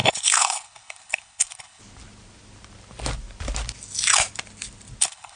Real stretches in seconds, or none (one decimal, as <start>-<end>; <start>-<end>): 1.8-5.0